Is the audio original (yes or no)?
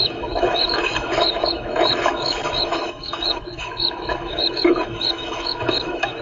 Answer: no